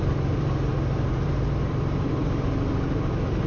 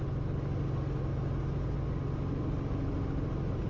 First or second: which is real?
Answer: second